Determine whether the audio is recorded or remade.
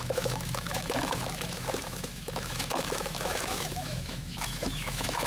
remade